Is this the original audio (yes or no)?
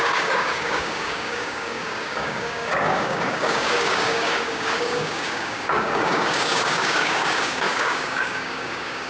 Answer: no